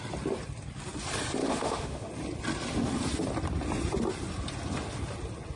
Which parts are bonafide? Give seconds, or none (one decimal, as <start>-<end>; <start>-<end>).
0.0-1.4; 2.1-5.6